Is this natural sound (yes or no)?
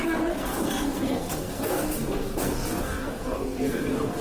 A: no